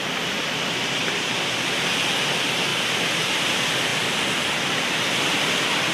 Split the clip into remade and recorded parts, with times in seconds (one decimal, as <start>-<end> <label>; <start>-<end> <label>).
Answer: 0.0-5.9 recorded